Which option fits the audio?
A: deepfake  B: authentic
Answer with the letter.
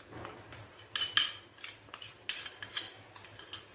B